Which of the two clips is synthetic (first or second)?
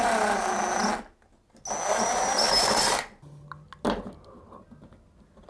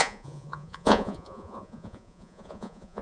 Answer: second